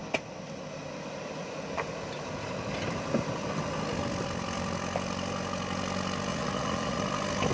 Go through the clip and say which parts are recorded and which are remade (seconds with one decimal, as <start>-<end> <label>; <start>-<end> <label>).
0.0-6.3 recorded; 6.3-7.0 remade; 7.0-7.5 recorded